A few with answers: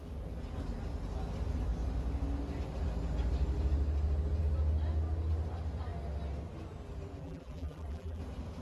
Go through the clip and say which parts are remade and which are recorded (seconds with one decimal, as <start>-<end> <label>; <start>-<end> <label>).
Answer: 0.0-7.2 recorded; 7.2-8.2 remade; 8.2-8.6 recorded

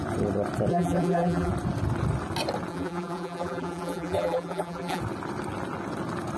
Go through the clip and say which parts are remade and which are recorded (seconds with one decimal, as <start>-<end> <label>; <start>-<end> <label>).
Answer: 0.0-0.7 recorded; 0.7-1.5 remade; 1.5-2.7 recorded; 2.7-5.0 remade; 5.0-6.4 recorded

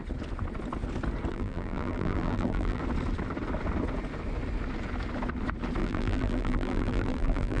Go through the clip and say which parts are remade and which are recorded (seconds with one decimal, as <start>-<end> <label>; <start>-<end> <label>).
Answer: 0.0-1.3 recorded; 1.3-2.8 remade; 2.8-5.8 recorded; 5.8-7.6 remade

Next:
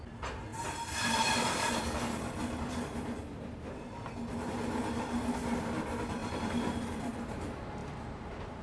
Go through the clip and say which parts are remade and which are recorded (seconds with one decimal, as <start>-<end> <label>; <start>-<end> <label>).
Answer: 0.0-0.5 recorded; 0.5-3.9 remade; 3.9-6.2 recorded; 6.2-7.1 remade; 7.1-7.8 recorded; 7.8-8.6 remade